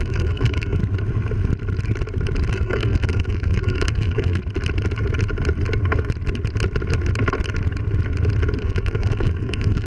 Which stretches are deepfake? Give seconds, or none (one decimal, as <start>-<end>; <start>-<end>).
0.0-0.8; 2.5-4.4; 8.6-9.9